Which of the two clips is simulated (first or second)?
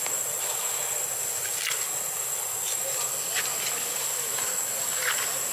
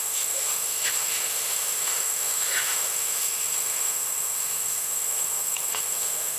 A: second